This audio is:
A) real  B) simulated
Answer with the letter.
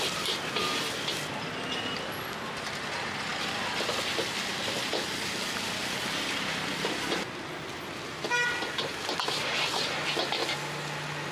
A